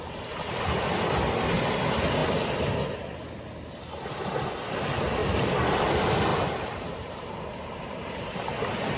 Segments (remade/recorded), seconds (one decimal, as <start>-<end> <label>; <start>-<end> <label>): 0.0-5.2 recorded; 5.2-5.7 remade; 5.7-6.3 recorded; 6.3-8.5 remade; 8.5-9.0 recorded